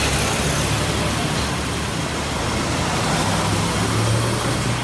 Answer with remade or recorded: recorded